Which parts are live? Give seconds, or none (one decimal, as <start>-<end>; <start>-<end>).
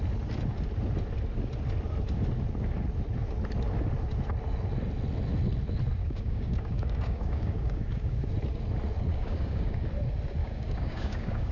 0.0-6.0; 8.3-9.1; 9.9-10.4